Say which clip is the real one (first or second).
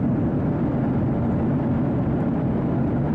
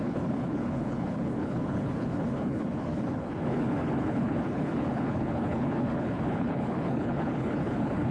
first